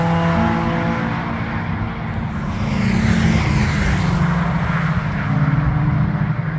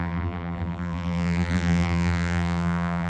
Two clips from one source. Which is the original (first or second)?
first